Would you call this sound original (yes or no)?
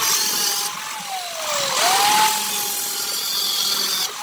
yes